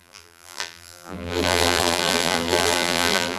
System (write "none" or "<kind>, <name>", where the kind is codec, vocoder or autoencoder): vocoder, BigVGAN v2